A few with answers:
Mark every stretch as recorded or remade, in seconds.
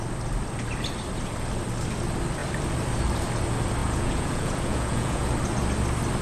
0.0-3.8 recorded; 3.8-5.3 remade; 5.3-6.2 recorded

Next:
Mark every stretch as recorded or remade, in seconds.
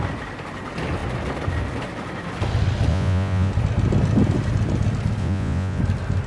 0.0-2.9 recorded; 2.9-3.5 remade; 3.5-5.2 recorded; 5.2-5.8 remade; 5.8-6.3 recorded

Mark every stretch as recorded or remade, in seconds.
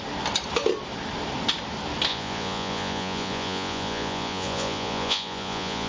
0.0-2.1 recorded; 2.1-5.9 remade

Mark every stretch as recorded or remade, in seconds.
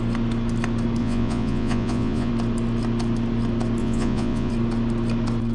0.0-1.0 recorded; 1.0-2.3 remade; 2.3-3.8 recorded; 3.8-4.5 remade; 4.5-5.5 recorded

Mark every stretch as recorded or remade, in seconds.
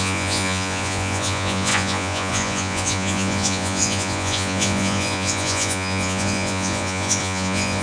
0.0-7.8 remade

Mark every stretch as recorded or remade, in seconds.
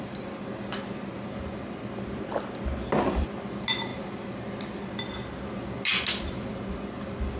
0.0-7.4 recorded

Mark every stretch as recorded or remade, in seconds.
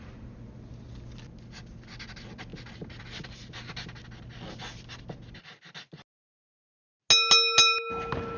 0.0-8.4 recorded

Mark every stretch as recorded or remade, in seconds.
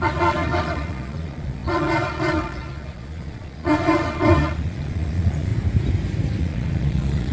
0.0-5.5 remade; 5.5-6.4 recorded; 6.4-7.3 remade